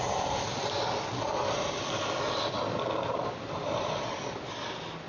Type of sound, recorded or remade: recorded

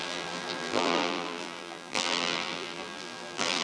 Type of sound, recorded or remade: remade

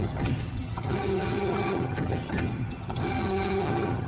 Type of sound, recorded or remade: remade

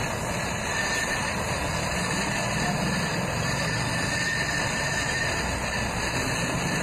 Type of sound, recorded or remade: recorded